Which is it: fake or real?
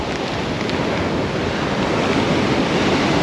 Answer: real